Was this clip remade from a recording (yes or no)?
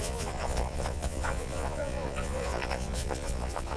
yes